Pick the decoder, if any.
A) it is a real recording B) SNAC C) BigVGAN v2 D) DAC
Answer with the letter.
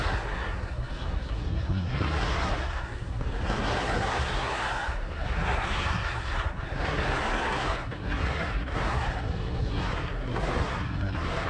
B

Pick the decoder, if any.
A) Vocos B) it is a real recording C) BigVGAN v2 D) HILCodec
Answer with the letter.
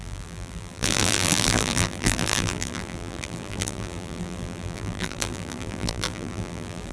C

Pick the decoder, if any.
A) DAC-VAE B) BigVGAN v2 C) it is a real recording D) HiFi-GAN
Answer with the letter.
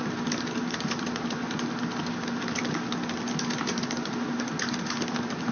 C